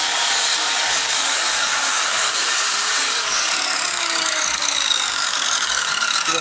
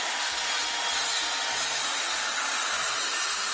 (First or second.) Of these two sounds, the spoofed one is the first